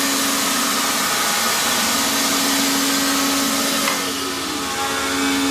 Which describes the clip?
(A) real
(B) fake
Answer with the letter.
A